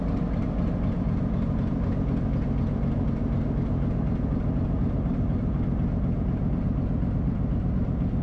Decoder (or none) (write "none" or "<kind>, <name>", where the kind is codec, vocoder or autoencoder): none